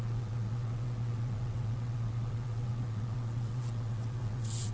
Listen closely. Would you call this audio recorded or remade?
remade